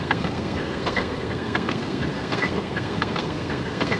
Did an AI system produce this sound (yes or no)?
yes